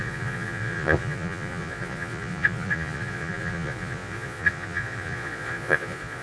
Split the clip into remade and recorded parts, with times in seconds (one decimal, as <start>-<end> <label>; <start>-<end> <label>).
0.0-6.2 remade

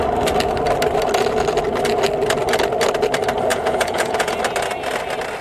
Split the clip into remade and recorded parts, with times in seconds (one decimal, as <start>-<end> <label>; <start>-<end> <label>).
0.0-3.5 recorded; 3.5-4.4 remade; 4.4-5.4 recorded

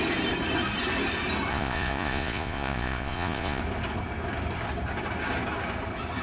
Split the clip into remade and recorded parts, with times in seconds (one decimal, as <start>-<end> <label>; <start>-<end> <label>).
0.0-1.5 recorded; 1.5-3.6 remade; 3.6-6.2 recorded

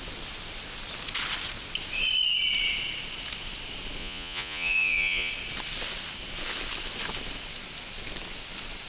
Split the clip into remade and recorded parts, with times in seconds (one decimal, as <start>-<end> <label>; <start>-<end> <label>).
0.0-4.0 recorded; 4.0-5.3 remade; 5.3-8.9 recorded